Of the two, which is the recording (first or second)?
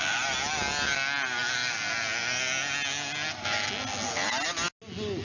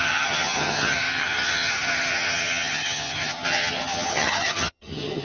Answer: first